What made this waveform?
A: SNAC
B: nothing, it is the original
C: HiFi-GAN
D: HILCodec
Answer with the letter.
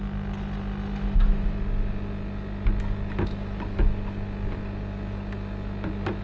B